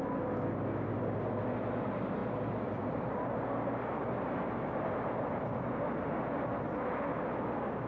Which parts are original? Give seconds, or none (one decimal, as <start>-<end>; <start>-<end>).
0.0-7.9